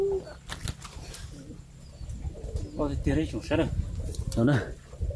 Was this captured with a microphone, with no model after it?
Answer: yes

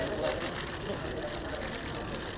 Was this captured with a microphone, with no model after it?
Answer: yes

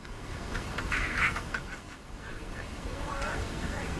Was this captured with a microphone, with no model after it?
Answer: no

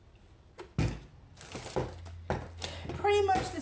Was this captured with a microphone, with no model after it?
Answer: yes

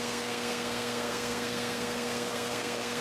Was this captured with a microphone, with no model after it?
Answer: no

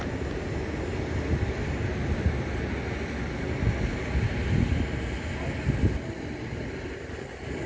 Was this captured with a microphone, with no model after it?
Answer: yes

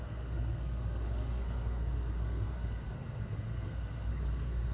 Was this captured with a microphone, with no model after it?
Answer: no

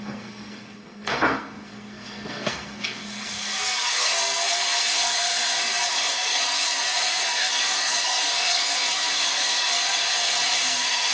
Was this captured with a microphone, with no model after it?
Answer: no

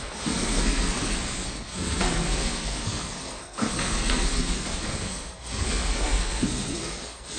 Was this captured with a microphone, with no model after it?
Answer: no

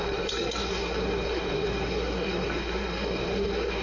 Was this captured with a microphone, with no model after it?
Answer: no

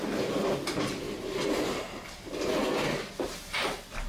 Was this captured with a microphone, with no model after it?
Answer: yes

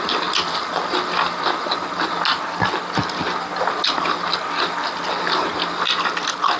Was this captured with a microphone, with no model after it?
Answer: yes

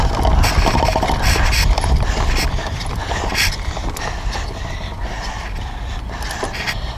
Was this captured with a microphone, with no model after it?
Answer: yes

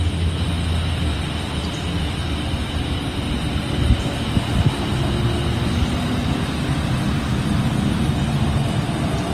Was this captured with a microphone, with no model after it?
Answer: yes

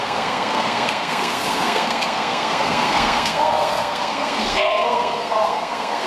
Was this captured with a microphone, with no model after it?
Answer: no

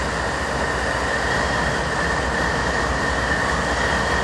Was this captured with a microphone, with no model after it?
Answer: yes